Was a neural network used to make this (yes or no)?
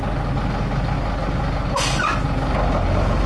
no